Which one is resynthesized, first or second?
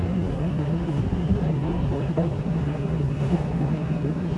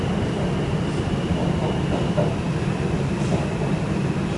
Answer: first